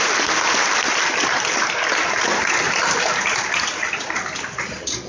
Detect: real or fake real